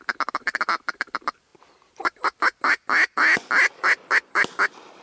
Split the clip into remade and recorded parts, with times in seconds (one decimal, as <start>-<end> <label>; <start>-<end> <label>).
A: 0.0-5.0 recorded